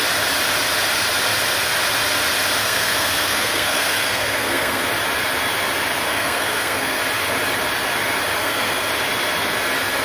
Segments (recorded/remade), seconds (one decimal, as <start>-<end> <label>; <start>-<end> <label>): 0.0-2.6 recorded; 2.6-4.8 remade; 4.8-6.1 recorded; 6.1-7.0 remade; 7.0-8.4 recorded; 8.4-8.9 remade; 8.9-10.0 recorded